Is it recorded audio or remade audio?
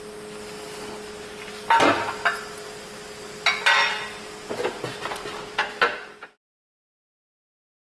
recorded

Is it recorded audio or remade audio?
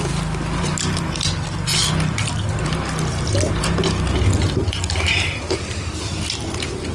recorded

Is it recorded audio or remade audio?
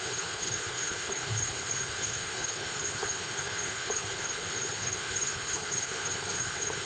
remade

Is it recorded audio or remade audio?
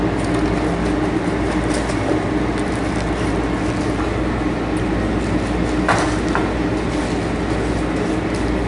recorded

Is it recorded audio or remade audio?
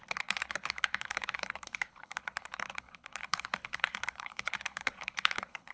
remade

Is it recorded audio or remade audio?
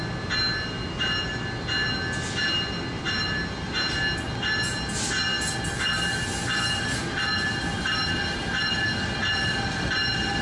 recorded